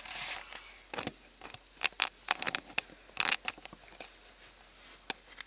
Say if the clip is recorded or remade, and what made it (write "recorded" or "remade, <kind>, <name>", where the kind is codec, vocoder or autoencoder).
recorded